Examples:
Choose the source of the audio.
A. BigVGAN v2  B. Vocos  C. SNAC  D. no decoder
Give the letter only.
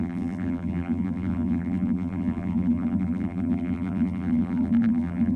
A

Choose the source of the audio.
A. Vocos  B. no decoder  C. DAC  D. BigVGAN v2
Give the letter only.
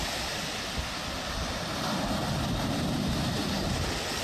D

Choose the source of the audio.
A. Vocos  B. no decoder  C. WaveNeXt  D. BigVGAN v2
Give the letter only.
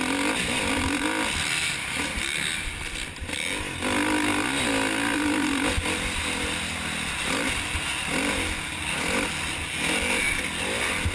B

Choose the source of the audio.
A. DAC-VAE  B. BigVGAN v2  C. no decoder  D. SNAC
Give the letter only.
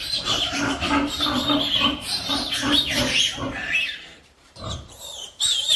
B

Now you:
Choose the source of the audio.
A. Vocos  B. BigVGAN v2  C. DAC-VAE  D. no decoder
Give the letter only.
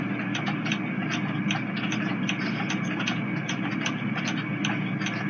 D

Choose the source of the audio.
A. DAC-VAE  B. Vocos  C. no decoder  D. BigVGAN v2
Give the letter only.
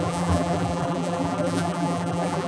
D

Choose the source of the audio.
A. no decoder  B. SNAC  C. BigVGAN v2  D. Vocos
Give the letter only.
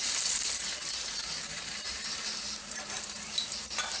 C